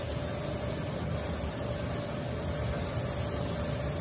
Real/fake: real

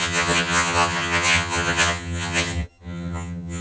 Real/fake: fake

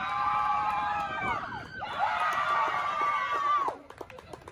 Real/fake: fake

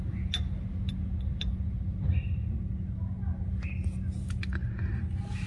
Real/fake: real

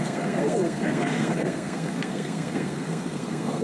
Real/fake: fake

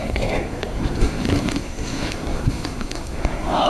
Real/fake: fake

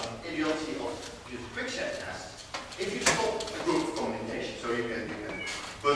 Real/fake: real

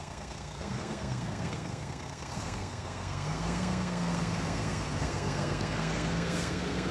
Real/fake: fake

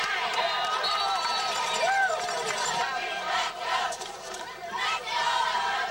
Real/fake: fake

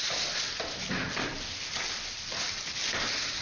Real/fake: real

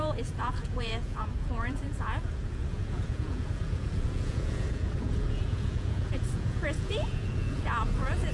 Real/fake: fake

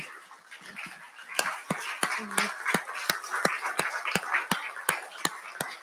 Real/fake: real